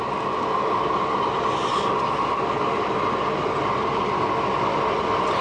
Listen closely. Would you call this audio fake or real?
real